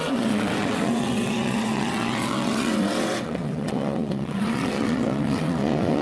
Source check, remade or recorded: remade